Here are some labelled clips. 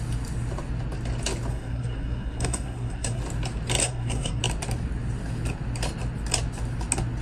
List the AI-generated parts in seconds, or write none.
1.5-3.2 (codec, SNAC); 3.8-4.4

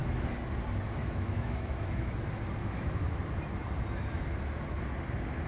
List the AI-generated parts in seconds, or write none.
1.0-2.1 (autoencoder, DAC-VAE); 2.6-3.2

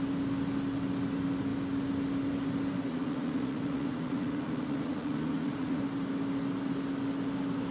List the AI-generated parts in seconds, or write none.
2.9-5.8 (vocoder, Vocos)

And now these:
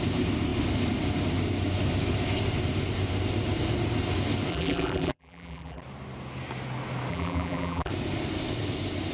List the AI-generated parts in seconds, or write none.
4.5-5.8 (vocoder, BigVGAN v2); 7.1-7.9

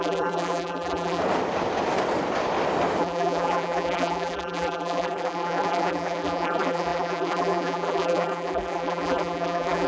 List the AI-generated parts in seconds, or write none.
0.0-1.2 (vocoder, BigVGAN v2); 3.0-9.9

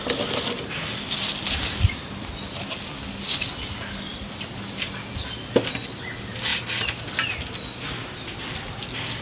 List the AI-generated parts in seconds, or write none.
none